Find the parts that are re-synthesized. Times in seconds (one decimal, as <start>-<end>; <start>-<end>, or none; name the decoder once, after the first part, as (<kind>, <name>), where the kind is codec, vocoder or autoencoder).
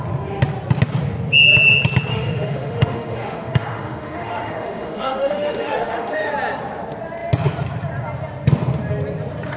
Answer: 2.1-6.3 (autoencoder, DAC-VAE)